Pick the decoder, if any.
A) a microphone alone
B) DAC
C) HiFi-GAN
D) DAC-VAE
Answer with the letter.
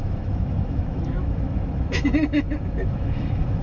D